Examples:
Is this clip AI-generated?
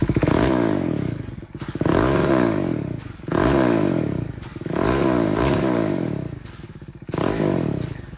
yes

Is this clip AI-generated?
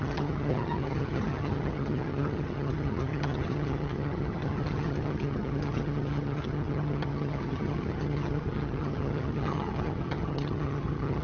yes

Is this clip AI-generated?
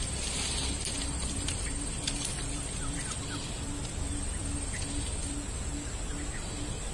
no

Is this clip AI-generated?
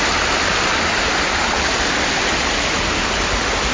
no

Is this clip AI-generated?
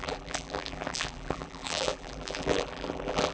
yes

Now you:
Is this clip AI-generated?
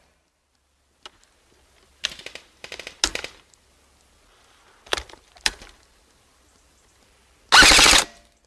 no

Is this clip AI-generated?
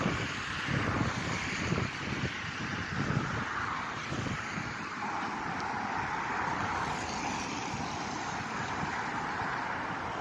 no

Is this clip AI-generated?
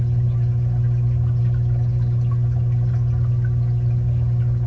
no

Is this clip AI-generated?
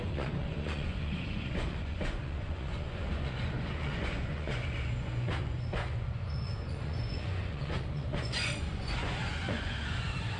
yes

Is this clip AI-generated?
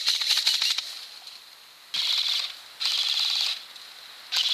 no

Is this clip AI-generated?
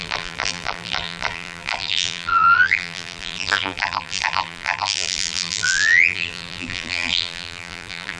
yes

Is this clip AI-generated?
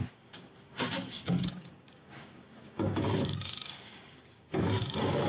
yes